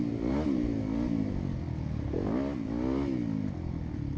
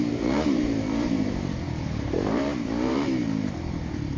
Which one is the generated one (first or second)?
second